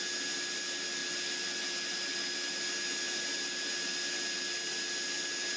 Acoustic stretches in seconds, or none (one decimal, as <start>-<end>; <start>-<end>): 0.0-5.6